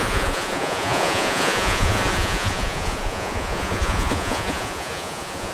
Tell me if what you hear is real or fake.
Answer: fake